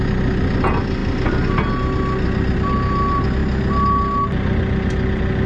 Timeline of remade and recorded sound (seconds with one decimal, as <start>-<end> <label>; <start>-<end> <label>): 0.0-5.5 recorded